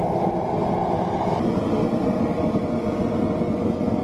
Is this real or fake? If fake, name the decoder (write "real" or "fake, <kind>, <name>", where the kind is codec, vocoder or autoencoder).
real